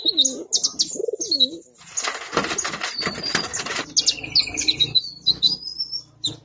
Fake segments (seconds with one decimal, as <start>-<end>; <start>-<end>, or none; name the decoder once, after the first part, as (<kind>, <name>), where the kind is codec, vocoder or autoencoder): none